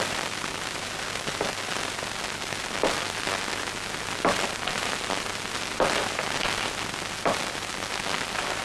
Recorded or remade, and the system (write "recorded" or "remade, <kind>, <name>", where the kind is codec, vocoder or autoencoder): recorded